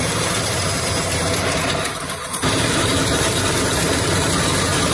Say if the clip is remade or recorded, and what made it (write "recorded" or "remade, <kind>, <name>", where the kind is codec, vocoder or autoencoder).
remade, vocoder, BigVGAN v2